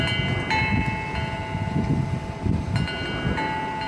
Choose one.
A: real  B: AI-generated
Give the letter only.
A